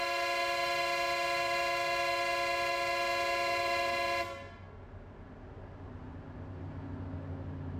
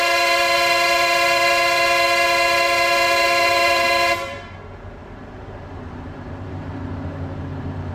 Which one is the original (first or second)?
first